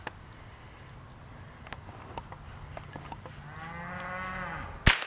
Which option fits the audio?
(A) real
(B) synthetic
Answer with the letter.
A